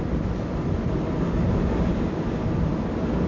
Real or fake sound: real